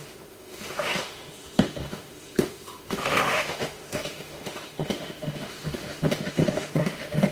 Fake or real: fake